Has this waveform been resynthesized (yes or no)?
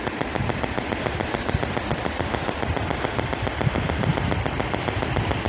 no